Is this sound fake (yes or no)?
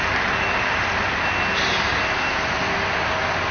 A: no